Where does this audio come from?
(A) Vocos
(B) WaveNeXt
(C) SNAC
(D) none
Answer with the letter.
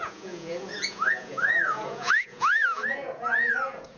A